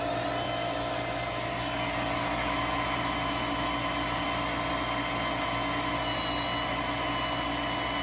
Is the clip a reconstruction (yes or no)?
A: no